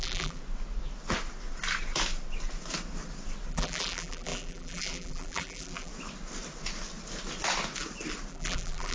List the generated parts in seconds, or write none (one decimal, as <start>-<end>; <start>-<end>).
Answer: 0.0-0.4; 3.5-5.9; 8.3-8.9